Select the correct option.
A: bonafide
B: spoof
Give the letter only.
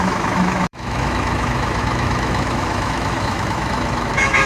B